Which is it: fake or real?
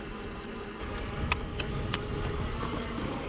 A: real